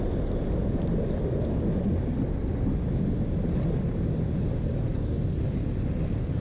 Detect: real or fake real